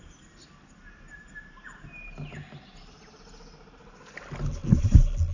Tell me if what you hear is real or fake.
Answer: real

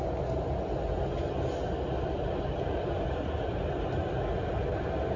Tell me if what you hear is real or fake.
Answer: real